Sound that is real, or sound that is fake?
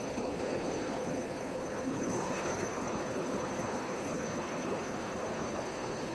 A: fake